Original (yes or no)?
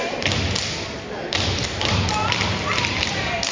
yes